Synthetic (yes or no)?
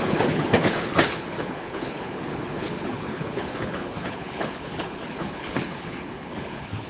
yes